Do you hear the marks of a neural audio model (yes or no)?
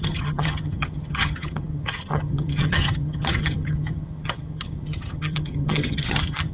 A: yes